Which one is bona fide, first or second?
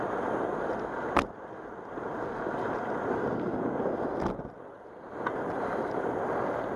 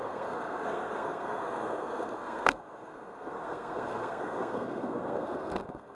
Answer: first